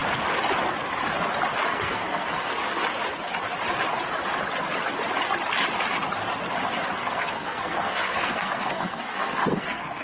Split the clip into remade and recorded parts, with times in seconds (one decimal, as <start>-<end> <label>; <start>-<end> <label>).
0.0-1.7 recorded; 1.7-2.5 remade; 2.5-7.0 recorded; 7.0-10.0 remade